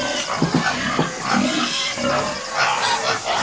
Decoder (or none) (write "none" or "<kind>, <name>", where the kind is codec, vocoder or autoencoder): none